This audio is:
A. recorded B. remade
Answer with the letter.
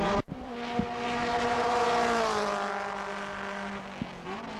A